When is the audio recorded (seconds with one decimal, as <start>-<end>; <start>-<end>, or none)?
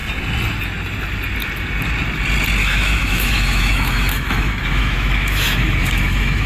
0.0-2.6